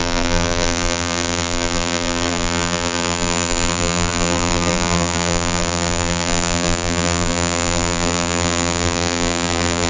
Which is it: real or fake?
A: fake